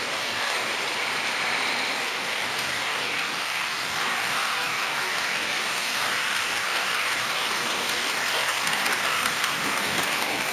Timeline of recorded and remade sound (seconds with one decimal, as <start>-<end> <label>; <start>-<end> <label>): 0.0-0.7 remade; 0.7-1.9 recorded; 1.9-10.5 remade